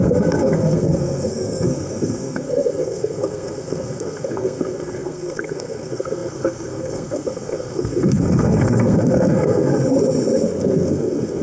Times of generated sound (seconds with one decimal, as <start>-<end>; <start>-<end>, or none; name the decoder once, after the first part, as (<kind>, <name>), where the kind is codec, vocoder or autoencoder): 0.0-9.7 (codec, SNAC); 10.6-11.4